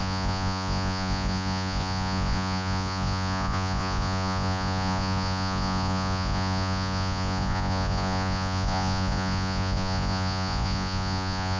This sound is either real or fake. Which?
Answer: fake